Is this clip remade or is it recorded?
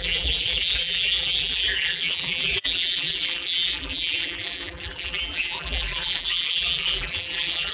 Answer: remade